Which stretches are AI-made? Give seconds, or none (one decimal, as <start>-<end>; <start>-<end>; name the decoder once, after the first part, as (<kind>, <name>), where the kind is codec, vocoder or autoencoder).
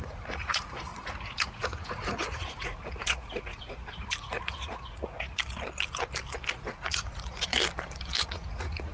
0.0-5.4 (vocoder, Vocos); 6.5-7.6; 8.2-8.9